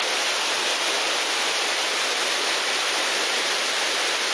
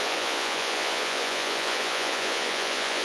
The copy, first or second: second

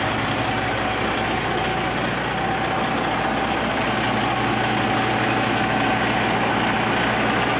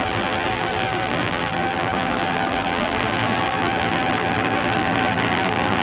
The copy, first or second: second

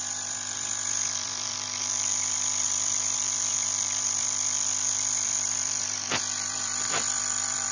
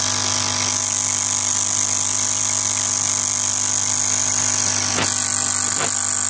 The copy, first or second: first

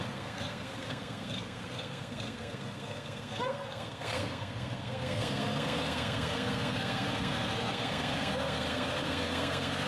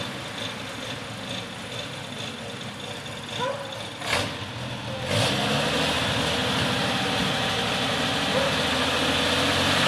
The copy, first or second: first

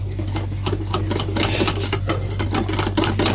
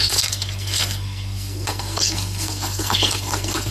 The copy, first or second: second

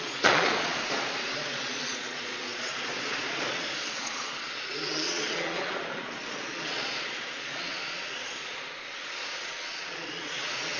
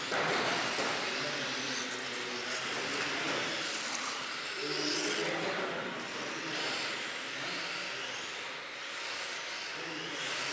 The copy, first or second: first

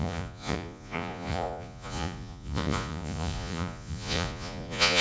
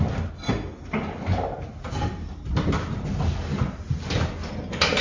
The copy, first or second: first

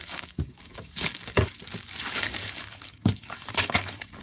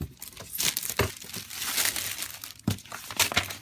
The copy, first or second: first